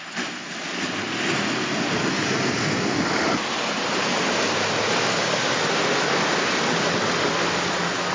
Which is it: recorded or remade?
recorded